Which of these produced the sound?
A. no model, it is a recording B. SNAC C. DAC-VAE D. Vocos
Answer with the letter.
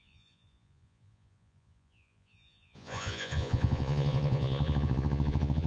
D